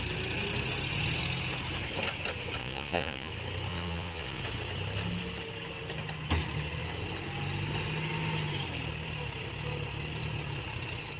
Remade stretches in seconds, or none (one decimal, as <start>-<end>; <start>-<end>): 2.6-3.3; 3.7-4.4